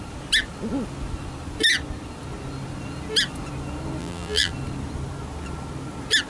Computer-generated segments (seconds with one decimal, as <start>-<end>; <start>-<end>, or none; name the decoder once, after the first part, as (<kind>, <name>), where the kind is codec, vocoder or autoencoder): 4.0-4.5 (vocoder, BigVGAN v2)